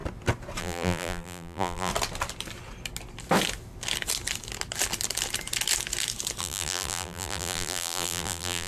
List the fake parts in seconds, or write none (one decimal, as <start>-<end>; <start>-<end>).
0.6-1.9; 6.4-8.7

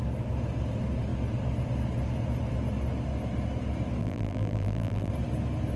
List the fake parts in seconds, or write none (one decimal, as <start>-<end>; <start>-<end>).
4.0-5.1

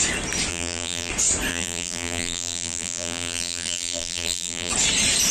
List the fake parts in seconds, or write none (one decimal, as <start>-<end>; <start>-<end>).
0.5-1.1; 1.5-4.7

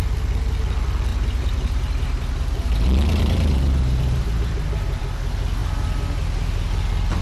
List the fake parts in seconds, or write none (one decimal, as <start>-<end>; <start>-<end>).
1.1-5.0

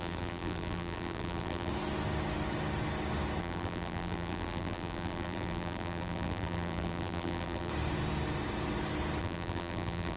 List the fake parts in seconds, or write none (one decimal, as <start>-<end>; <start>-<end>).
0.0-1.7; 3.4-7.7; 9.2-10.2

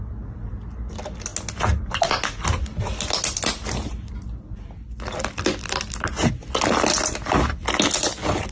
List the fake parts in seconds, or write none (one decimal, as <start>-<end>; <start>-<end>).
none